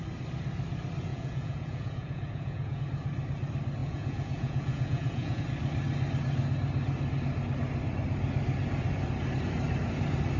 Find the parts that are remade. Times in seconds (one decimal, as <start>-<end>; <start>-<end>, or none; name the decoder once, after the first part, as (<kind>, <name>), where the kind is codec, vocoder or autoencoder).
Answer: 1.1-2.8 (vocoder, Vocos); 3.8-5.4

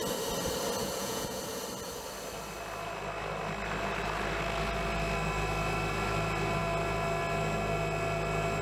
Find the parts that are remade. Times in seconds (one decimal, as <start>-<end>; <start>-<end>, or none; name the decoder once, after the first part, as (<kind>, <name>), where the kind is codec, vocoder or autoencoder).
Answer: 0.8-1.4 (vocoder, Vocos)

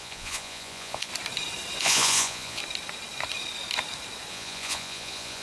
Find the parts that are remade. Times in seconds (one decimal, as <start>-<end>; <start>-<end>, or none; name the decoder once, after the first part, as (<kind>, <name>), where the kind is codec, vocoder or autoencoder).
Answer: 0.0-1.1 (vocoder, Vocos); 1.8-2.6; 4.3-5.4

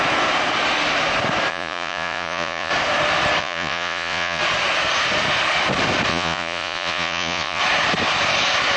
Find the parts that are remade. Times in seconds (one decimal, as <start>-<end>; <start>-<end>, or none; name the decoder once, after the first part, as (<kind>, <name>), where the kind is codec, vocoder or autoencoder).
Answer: 1.5-2.7 (vocoder, Vocos); 3.4-4.4; 6.1-7.6

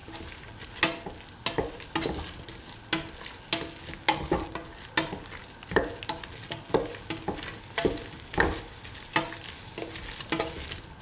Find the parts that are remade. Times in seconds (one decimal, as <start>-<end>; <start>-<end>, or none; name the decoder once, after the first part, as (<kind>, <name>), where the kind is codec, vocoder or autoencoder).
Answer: none

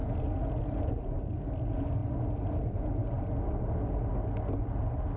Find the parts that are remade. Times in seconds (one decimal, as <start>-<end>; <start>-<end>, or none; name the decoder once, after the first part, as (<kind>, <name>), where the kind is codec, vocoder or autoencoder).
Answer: none

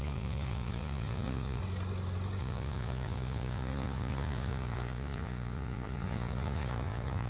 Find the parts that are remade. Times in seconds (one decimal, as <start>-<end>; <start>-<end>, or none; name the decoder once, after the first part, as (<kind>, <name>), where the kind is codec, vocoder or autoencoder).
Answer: 0.0-1.6 (vocoder, Vocos); 2.4-7.3

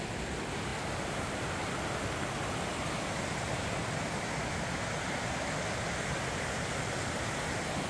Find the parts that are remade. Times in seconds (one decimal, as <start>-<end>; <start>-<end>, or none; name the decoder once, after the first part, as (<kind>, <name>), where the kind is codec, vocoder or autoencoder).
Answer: none